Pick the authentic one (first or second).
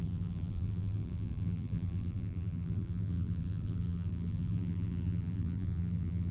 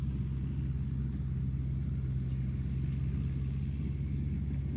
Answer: second